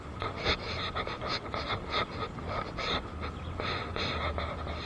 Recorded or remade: recorded